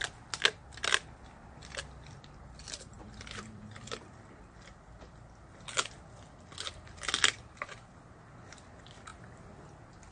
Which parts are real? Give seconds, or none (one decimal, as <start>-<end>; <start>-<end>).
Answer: 0.0-2.9; 4.7-10.1